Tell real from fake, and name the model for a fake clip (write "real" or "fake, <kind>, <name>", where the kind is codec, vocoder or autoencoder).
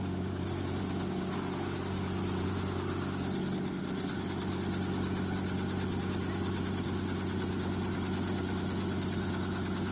real